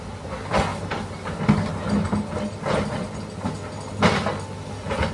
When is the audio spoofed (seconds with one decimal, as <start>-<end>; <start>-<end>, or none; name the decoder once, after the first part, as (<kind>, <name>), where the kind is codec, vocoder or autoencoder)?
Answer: none